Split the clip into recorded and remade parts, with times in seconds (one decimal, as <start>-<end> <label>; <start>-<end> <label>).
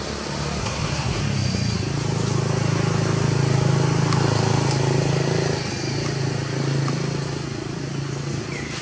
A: 0.0-0.6 recorded; 0.6-1.2 remade; 1.2-8.8 recorded